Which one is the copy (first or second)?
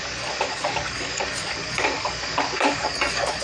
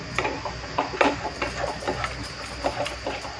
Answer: first